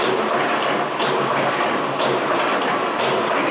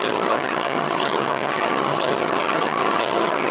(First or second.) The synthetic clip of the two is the second